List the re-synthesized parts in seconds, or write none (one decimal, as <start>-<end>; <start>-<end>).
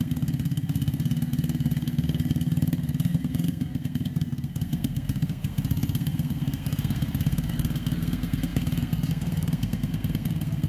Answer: 0.0-10.7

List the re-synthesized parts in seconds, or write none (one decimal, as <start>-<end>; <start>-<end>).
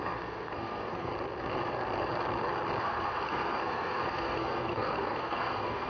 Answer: 0.0-1.1; 2.8-5.9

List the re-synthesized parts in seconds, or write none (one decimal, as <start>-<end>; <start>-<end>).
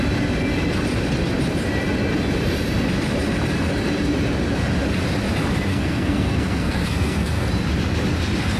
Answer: 5.7-7.5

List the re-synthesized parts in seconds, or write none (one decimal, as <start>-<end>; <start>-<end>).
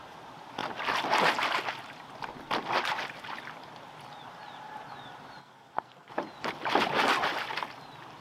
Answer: 5.4-6.1